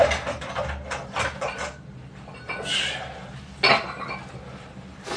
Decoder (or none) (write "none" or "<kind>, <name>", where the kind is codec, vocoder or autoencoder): none